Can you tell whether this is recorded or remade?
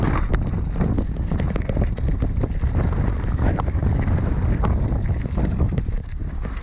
recorded